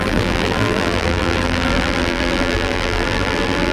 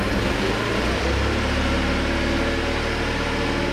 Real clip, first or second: second